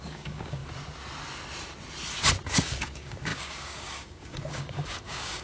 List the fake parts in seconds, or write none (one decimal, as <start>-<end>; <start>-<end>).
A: 0.0-0.6; 2.6-5.4